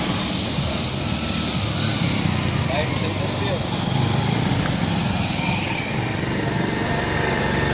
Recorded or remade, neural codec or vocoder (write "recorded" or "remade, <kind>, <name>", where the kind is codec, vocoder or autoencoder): recorded